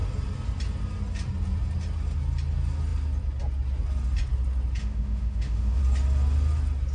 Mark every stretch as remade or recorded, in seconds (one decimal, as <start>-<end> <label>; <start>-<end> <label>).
0.0-4.8 recorded; 4.8-5.8 remade; 5.8-6.9 recorded